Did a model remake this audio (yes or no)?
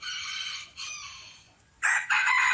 yes